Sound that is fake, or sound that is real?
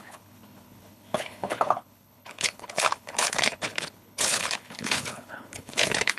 fake